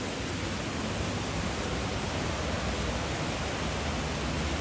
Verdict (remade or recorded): recorded